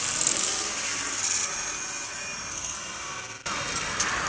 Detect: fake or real real